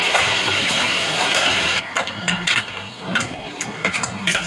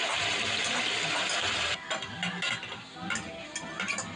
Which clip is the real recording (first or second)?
second